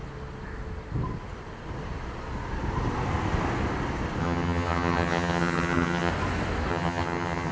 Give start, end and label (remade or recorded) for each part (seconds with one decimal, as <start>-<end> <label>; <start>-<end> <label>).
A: 0.0-4.2 recorded; 4.2-6.1 remade; 6.1-6.7 recorded; 6.7-7.5 remade